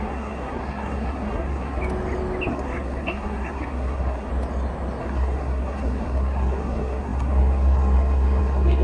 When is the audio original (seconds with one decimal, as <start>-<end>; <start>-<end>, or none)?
1.8-2.5; 4.3-5.0